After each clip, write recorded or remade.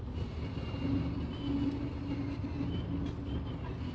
recorded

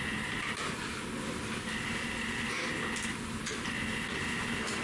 recorded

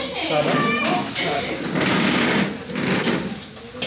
recorded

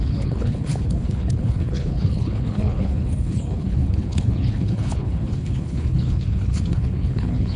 remade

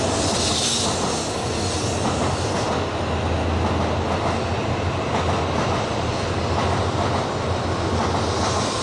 recorded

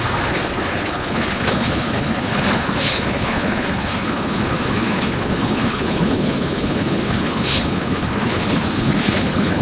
remade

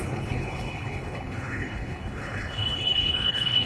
remade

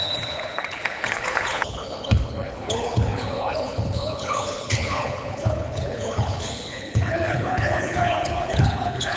remade